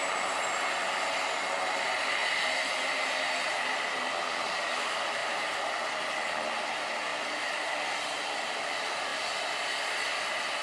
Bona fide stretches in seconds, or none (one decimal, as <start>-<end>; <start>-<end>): 0.0-2.2; 4.1-5.2; 5.9-7.1; 7.7-10.6